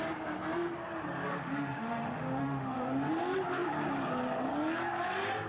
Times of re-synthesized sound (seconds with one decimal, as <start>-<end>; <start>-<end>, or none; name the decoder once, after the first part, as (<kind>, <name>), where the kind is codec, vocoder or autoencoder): 1.3-3.1 (autoencoder, DAC-VAE)